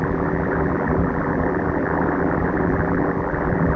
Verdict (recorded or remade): remade